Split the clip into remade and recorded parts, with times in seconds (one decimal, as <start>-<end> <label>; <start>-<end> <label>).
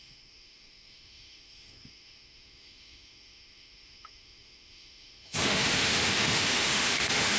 0.0-7.4 remade